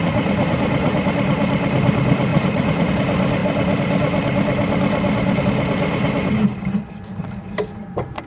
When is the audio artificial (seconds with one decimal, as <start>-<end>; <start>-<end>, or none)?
0.0-1.1; 2.3-2.9